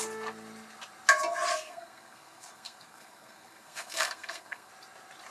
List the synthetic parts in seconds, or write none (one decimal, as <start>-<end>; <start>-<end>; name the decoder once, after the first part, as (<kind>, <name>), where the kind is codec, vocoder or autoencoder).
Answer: 1.5-4.7 (codec, SNAC)